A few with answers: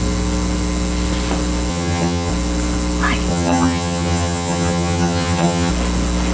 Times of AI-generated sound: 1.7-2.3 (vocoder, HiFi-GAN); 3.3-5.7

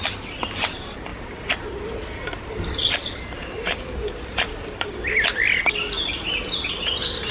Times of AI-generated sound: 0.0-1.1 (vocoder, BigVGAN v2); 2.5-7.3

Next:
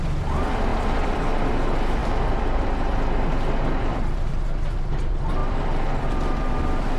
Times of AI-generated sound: 0.0-7.0 (vocoder, BigVGAN v2)

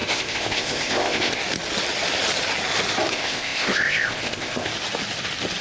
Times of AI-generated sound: 0.0-1.4 (codec, ZipCodec); 3.1-4.7

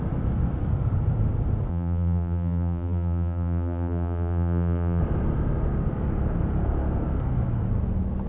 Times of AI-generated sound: 1.7-5.0 (vocoder, BigVGAN v2)

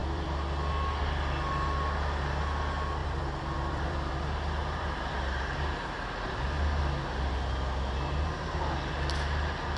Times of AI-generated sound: 0.0-0.7 (vocoder, BigVGAN v2); 3.0-4.1; 4.6-6.8

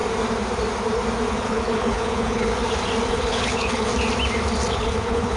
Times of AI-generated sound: 1.3-2.5 (codec, HILCodec); 3.1-3.9; 4.7-5.4